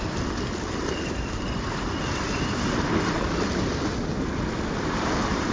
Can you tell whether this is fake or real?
real